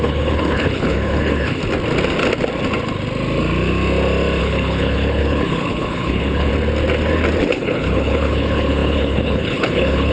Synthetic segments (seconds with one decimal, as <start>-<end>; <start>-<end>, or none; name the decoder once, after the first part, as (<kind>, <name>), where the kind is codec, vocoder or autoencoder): 0.0-1.6 (codec, HILCodec); 4.4-6.5; 7.5-10.1